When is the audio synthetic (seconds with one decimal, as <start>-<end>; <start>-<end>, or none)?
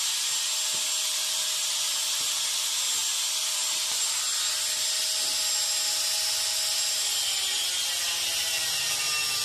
none